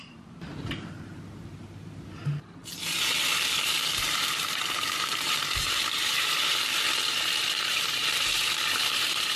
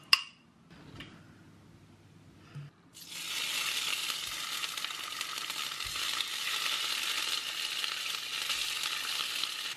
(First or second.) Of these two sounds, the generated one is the first